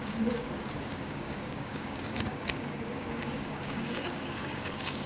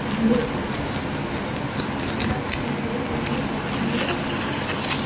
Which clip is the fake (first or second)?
first